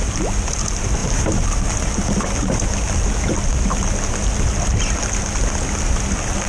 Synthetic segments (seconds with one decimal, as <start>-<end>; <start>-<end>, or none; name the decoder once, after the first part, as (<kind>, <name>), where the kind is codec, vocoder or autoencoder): none